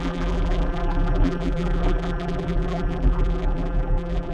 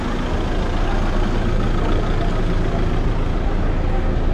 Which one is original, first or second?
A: second